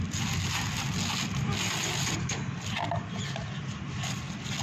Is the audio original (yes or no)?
yes